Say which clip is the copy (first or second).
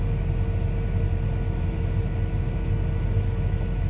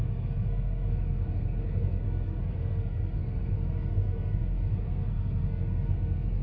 second